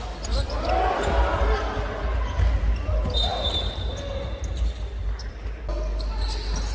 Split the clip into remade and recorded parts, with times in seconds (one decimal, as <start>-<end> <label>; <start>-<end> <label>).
0.0-6.7 recorded